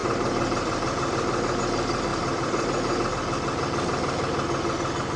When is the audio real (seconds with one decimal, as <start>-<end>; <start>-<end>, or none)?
1.6-2.1; 3.1-5.2